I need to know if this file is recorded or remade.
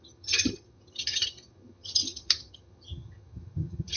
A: remade